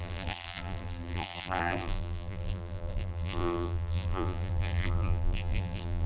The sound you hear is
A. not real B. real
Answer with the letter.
A